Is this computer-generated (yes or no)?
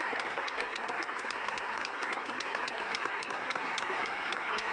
yes